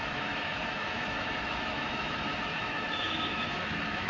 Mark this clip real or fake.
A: fake